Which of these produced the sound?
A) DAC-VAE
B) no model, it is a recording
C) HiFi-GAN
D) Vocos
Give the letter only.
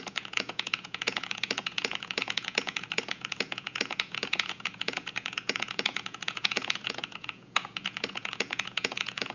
D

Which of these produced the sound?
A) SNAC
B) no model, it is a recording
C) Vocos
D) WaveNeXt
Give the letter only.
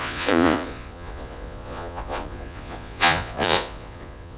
C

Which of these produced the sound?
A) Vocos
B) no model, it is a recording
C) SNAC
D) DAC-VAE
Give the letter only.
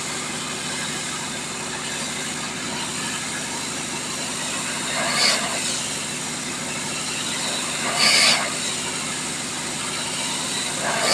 B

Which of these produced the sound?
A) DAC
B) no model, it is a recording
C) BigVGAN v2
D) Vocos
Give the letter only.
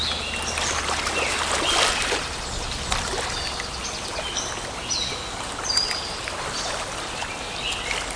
B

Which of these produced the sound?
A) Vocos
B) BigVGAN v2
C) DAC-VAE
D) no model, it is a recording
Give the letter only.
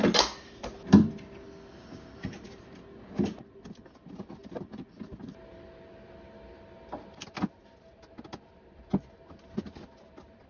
D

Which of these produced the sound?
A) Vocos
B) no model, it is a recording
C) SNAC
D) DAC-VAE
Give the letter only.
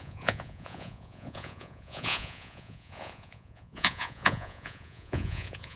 A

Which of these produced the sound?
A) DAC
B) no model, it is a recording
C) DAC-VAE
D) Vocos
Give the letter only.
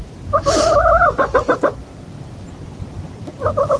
B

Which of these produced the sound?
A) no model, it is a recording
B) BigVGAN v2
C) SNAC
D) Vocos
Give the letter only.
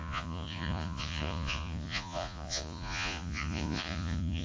D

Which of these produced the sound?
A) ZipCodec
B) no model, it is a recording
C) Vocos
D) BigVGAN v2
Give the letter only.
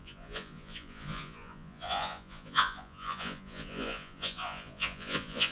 C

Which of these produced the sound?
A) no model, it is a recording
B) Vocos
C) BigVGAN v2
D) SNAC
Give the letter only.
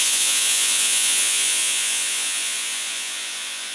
B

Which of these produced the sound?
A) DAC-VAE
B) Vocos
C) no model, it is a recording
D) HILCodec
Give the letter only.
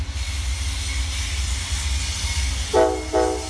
C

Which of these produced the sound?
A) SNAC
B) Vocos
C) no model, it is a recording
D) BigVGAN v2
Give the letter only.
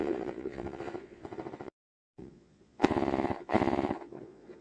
B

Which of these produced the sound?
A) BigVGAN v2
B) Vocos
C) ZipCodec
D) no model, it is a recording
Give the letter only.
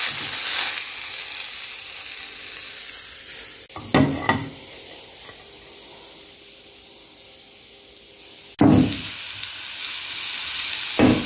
D